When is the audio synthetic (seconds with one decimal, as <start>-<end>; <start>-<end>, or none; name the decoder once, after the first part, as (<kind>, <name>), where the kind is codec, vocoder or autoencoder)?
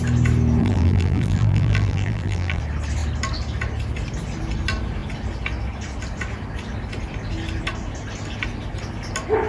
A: 0.6-2.6 (vocoder, BigVGAN v2)